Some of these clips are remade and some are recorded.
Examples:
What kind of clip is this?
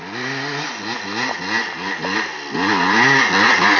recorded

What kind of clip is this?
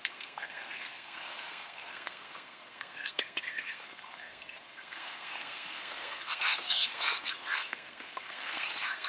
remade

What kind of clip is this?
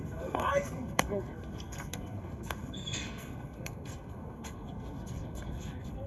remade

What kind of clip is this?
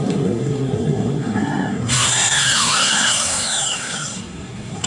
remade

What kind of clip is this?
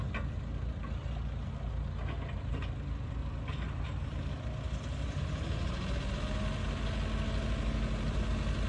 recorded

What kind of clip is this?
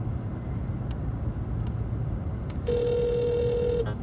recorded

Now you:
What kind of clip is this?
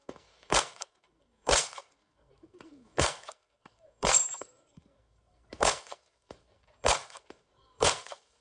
remade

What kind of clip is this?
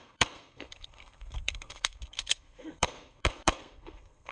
remade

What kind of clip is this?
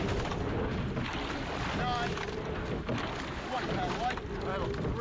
recorded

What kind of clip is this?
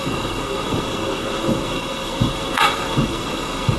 remade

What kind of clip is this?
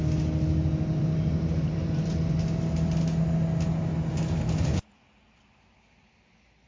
recorded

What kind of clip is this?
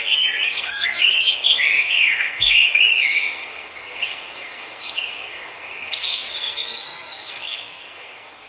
remade